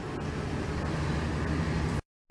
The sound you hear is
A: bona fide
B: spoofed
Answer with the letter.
A